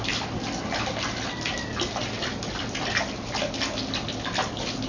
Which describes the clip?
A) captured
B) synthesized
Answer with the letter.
A